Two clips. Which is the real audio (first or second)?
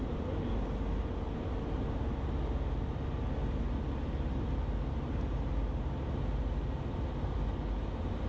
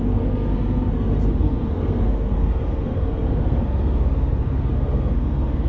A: first